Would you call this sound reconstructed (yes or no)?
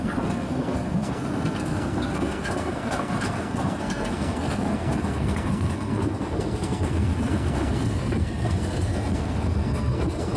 yes